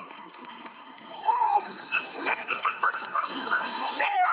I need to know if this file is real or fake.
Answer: fake